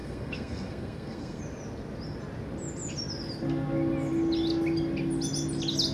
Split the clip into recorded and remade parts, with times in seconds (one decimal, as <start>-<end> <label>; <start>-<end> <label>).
0.0-1.4 remade; 1.4-5.9 recorded